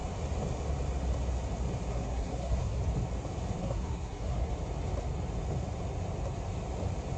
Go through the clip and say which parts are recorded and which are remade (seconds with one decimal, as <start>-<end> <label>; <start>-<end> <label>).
0.0-1.9 recorded; 1.9-2.8 remade; 2.8-3.6 recorded; 3.6-4.5 remade; 4.5-7.2 recorded